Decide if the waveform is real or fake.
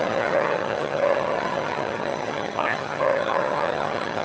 fake